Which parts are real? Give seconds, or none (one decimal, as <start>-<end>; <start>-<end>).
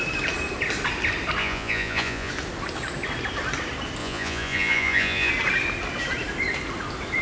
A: 0.0-1.4; 2.3-4.0; 5.3-7.2